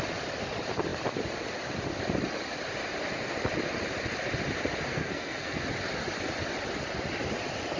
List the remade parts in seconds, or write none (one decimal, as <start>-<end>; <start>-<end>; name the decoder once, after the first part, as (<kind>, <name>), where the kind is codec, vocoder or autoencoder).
4.9-5.6 (codec, SNAC)